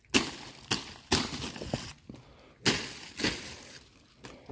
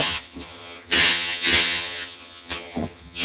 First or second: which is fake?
second